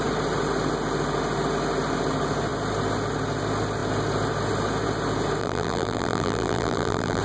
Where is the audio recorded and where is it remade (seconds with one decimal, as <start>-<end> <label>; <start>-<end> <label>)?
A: 0.0-5.4 recorded; 5.4-7.2 remade